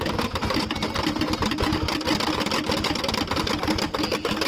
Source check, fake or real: real